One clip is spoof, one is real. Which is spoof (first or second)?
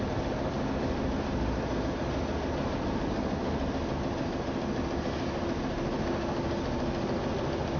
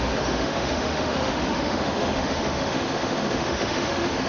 second